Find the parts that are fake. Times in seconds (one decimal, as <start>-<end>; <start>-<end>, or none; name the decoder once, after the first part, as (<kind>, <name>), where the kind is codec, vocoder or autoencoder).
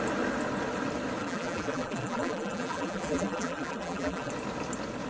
1.2-4.3 (vocoder, BigVGAN v2)